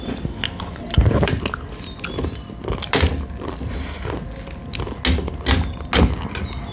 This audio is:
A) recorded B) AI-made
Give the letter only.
A